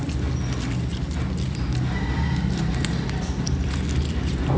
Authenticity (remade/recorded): recorded